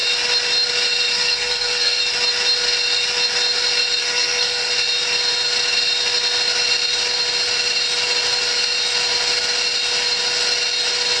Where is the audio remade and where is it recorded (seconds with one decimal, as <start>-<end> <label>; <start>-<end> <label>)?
0.0-1.1 recorded; 1.1-2.0 remade; 2.0-4.0 recorded; 4.0-4.7 remade; 4.7-11.2 recorded